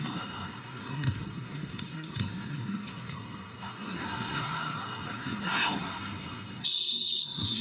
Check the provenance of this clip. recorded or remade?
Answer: remade